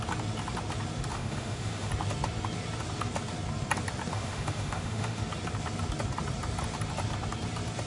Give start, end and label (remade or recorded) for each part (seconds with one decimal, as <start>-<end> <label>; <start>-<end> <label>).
0.0-1.1 recorded; 1.1-1.9 remade; 1.9-4.1 recorded; 4.1-5.2 remade; 5.2-7.9 recorded